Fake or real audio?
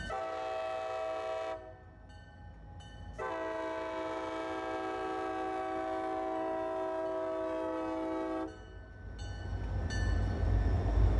real